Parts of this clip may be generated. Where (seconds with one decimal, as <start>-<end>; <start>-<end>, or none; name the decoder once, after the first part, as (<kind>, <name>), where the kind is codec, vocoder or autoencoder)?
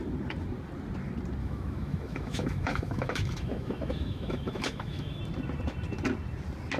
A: 1.4-5.2 (autoencoder, DAC-VAE)